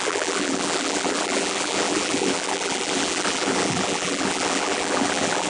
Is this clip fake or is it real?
fake